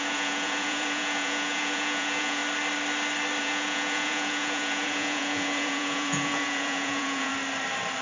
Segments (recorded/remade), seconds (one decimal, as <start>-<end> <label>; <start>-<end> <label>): 0.0-2.4 remade; 2.4-3.4 recorded; 3.4-7.3 remade; 7.3-8.0 recorded